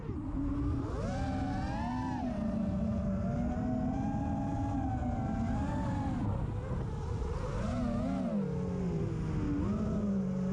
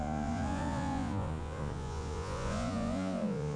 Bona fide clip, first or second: first